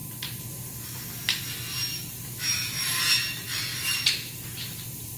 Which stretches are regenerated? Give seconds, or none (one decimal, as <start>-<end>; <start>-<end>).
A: 0.0-0.7; 1.9-5.2

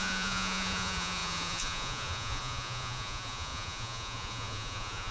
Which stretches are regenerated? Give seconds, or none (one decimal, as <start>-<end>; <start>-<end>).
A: 0.0-5.1